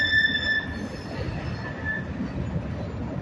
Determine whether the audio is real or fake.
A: real